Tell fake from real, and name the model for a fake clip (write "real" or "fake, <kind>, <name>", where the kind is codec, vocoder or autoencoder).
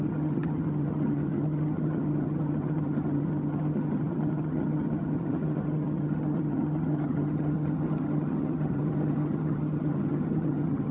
fake, vocoder, HiFi-GAN